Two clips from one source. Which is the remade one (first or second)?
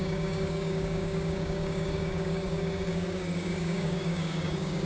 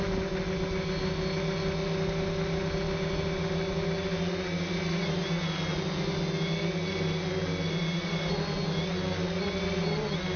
first